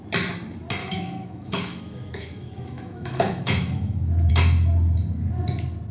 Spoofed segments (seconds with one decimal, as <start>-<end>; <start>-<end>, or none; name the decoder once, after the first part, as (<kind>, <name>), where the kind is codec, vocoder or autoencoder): 0.8-4.3 (autoencoder, DAC-VAE)